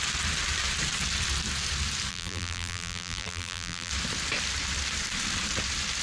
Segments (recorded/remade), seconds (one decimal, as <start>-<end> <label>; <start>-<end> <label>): 0.0-2.1 recorded; 2.1-3.9 remade; 3.9-6.0 recorded

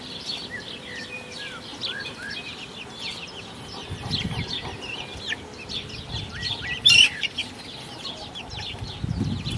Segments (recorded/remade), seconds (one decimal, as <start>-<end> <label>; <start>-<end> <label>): 0.0-7.4 remade; 7.4-8.4 recorded; 8.4-9.6 remade

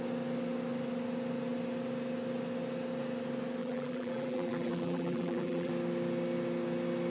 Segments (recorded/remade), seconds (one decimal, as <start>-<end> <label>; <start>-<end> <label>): 0.0-3.6 recorded; 3.6-5.7 remade; 5.7-7.1 recorded

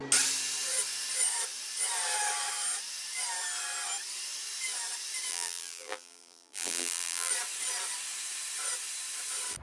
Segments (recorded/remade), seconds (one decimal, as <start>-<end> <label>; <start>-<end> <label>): 0.0-5.3 recorded; 5.3-7.3 remade; 7.3-9.6 recorded

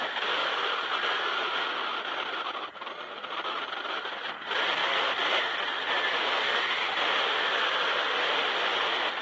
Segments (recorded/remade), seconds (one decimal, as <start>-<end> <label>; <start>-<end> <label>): 0.0-4.8 recorded; 4.8-7.2 remade; 7.2-9.2 recorded

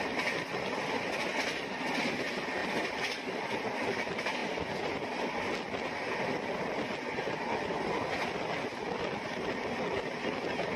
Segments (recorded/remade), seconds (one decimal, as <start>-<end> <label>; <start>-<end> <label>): 0.0-2.6 recorded; 2.6-3.6 remade; 3.6-8.7 recorded; 8.7-9.6 remade; 9.6-10.8 recorded